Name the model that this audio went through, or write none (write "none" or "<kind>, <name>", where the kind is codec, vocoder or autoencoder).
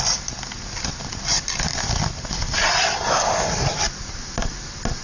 none